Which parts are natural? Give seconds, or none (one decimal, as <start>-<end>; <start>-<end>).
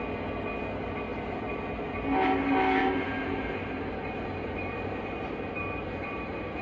0.0-1.1; 1.6-2.8